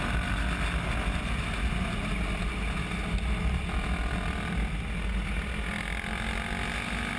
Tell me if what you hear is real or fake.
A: real